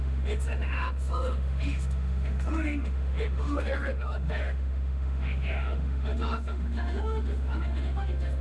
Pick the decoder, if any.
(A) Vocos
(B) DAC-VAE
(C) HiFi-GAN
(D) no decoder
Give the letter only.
B